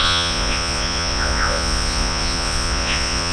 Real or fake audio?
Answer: fake